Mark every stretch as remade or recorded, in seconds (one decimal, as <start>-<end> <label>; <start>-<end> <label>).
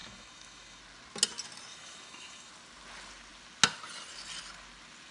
0.0-0.8 remade; 0.8-1.7 recorded; 1.7-2.5 remade; 2.5-5.1 recorded